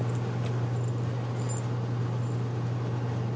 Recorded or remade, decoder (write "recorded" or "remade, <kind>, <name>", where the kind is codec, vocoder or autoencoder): recorded